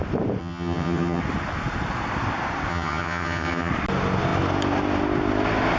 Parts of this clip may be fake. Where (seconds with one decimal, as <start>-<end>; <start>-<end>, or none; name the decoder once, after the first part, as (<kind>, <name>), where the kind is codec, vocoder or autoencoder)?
0.4-1.2 (vocoder, HiFi-GAN); 2.7-3.7